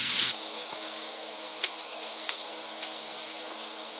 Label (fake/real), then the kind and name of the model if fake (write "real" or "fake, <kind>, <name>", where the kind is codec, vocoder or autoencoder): fake, codec, SNAC